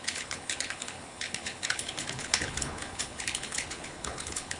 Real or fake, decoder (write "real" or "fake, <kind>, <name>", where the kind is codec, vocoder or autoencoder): fake, codec, HILCodec